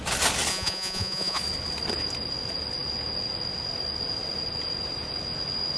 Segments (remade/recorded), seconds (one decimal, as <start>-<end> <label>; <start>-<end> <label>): 0.0-0.5 recorded; 0.5-1.4 remade; 1.4-5.8 recorded